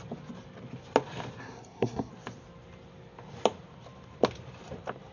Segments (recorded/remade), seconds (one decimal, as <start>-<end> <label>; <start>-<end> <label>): 0.0-1.4 recorded; 1.4-2.1 remade; 2.1-5.1 recorded